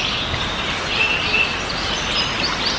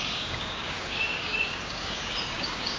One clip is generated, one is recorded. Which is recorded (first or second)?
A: first